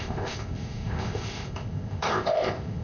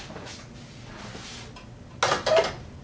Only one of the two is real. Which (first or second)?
second